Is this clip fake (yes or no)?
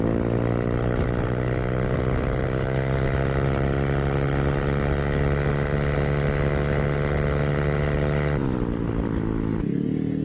no